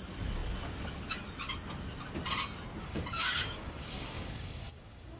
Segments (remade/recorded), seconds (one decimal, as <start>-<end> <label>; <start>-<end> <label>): 0.0-2.8 recorded; 2.8-5.2 remade